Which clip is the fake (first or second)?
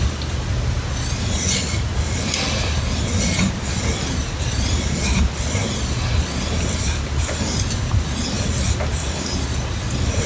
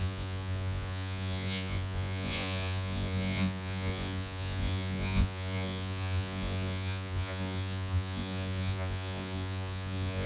second